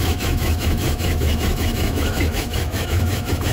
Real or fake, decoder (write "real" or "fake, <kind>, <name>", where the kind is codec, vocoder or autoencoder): fake, autoencoder, DAC-VAE